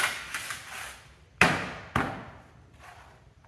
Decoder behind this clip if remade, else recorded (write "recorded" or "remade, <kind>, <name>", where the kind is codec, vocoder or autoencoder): recorded